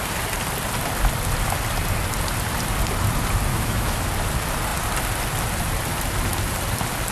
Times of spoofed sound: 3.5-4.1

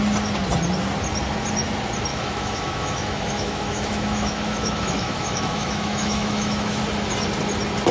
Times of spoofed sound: 2.1-6.8

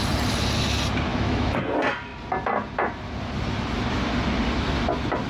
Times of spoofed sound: 1.1-1.6

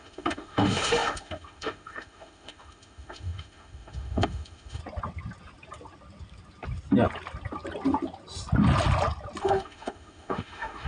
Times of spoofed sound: 0.0-4.8; 9.4-10.9